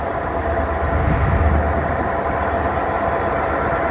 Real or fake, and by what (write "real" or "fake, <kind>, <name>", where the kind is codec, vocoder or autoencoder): real